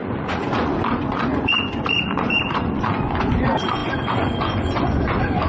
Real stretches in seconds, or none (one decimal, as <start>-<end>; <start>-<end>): none